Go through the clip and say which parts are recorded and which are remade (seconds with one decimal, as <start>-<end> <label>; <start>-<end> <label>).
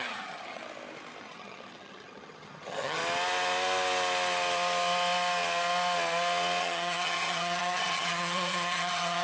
0.0-0.6 remade; 0.6-1.2 recorded; 1.2-3.0 remade; 3.0-6.6 recorded; 6.6-9.2 remade